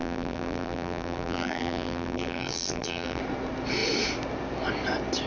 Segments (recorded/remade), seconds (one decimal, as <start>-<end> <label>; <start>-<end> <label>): 0.0-3.2 remade; 3.2-5.3 recorded